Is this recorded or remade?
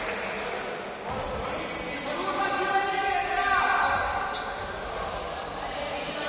recorded